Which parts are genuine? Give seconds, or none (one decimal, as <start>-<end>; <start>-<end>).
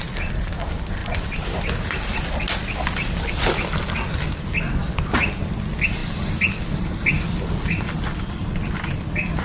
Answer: 0.0-6.0; 6.6-9.4